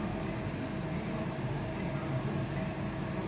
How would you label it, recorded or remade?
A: recorded